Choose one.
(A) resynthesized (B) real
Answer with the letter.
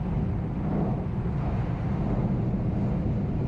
B